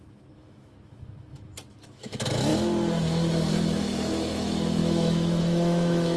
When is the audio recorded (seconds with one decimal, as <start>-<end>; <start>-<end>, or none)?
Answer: 2.5-3.5